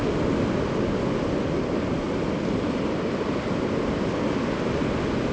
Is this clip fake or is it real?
real